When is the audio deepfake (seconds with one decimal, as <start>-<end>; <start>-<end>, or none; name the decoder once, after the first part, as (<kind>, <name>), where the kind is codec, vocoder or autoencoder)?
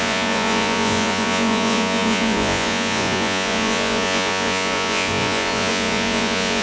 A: 0.0-6.6 (vocoder, Vocos)